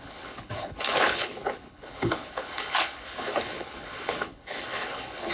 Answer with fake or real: fake